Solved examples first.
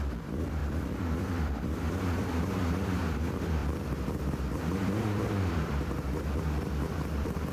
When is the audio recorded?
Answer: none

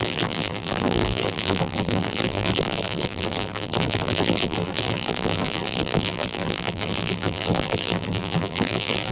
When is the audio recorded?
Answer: none

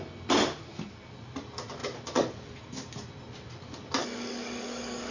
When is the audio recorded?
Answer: 0.0-4.0

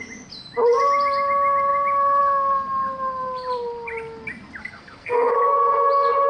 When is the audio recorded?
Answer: 0.0-4.6; 5.3-6.3

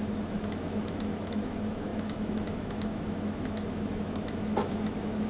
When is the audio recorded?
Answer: none